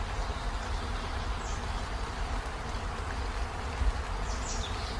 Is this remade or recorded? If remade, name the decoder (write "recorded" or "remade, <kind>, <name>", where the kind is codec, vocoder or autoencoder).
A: recorded